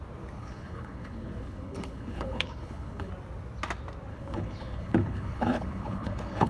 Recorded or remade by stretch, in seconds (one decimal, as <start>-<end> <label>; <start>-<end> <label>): 0.0-0.4 recorded; 0.4-3.1 remade; 3.1-4.1 recorded; 4.1-6.5 remade